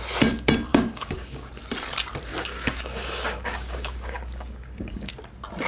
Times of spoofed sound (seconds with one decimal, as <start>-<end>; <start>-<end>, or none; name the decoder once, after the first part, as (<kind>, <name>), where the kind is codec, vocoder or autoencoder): 0.7-1.5 (codec, DAC); 2.3-5.1